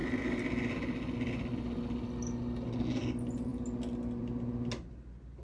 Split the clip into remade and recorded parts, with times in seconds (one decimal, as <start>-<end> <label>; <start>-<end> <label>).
0.0-5.4 recorded